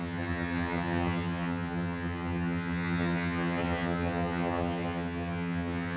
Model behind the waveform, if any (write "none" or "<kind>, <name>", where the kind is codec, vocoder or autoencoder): vocoder, HiFi-GAN